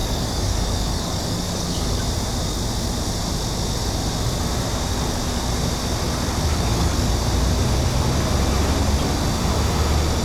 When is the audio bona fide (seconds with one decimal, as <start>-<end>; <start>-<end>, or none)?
2.0-6.5; 7.1-10.2